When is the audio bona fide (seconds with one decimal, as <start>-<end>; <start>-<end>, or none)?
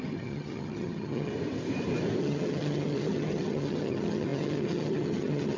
1.3-2.2